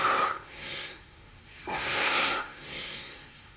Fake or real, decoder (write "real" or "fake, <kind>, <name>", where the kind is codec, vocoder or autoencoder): fake, codec, SNAC